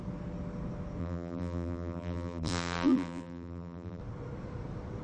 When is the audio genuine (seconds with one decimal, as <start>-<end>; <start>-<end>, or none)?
0.0-1.0; 4.0-5.0